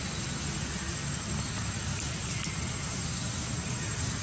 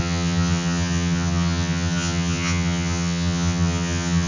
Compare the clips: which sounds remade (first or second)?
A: second